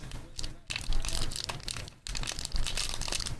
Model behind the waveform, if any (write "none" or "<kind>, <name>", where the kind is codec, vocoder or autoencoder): none